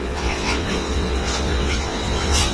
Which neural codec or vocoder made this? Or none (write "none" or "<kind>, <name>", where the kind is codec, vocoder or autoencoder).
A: vocoder, WaveNeXt